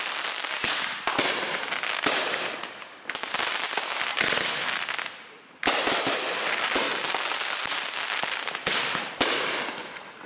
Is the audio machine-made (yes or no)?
no